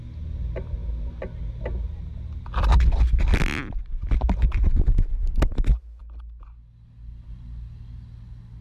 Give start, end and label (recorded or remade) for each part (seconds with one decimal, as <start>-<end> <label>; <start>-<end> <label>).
0.0-8.6 recorded